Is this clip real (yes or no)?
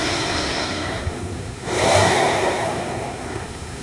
no